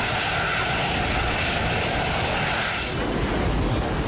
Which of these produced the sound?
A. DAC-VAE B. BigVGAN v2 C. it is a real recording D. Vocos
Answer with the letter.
C